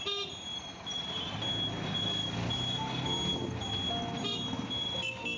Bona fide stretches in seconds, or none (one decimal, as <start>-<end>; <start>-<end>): 0.0-5.4